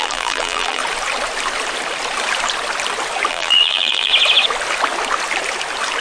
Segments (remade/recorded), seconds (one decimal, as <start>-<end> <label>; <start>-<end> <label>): 0.0-0.8 remade; 0.8-3.3 recorded; 3.3-4.1 remade; 4.1-6.0 recorded